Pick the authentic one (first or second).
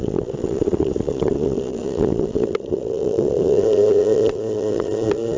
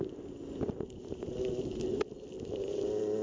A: second